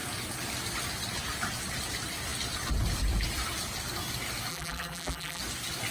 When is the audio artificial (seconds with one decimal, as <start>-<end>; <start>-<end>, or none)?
4.5-5.4

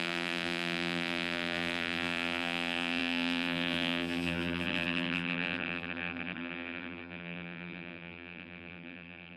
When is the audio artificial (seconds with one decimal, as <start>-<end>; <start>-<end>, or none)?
0.0-9.4

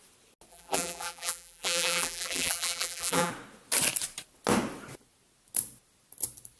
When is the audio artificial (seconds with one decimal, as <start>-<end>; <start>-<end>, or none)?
0.5-3.3

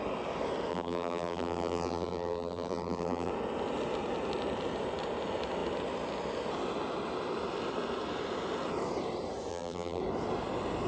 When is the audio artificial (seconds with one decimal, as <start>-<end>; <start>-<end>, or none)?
0.7-3.3; 9.5-10.0

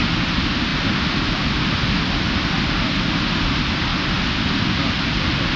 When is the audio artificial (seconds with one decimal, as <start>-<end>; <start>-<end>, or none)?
none

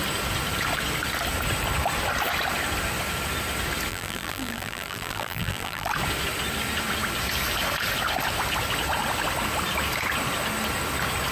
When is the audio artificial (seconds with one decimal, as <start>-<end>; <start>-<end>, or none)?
3.9-5.9

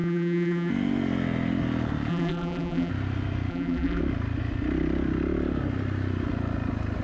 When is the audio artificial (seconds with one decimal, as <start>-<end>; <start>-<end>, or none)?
0.0-0.7; 2.1-2.9; 3.5-4.0

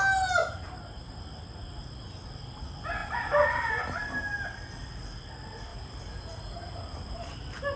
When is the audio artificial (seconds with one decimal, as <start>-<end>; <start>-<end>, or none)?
0.4-1.1; 3.0-4.2; 5.7-7.3